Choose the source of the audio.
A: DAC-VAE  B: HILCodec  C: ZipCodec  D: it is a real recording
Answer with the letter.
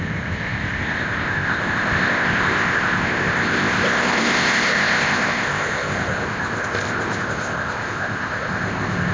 C